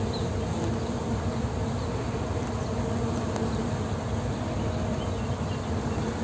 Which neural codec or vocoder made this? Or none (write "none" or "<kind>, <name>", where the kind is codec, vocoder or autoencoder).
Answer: none